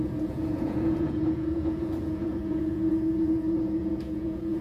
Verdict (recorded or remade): remade